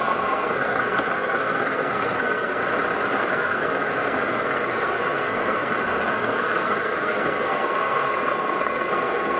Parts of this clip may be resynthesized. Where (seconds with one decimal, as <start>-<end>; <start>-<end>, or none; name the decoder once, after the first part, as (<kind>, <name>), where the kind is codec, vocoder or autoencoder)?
0.0-2.6 (codec, SNAC); 3.1-9.4